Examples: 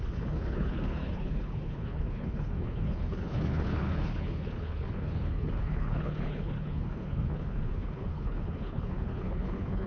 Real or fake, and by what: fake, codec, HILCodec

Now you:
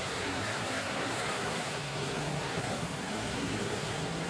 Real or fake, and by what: fake, codec, SNAC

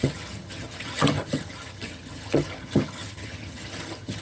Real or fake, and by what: fake, vocoder, HiFi-GAN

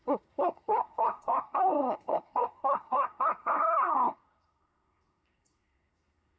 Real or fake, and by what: fake, codec, SNAC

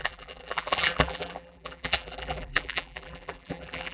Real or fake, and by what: fake, vocoder, BigVGAN v2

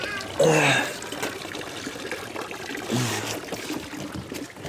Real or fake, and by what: real